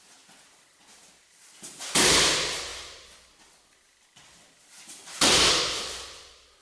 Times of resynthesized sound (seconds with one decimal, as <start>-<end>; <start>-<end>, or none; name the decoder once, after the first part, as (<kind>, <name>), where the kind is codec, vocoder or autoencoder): none